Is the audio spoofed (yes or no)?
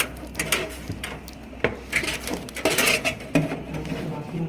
no